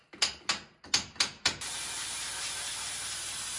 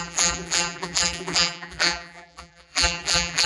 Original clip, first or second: first